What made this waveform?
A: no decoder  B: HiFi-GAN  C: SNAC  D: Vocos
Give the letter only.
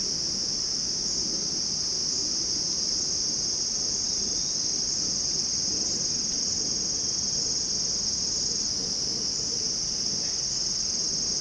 A